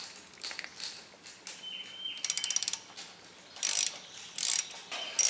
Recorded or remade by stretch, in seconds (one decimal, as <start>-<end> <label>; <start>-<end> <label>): 0.0-5.3 recorded